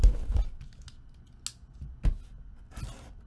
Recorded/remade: recorded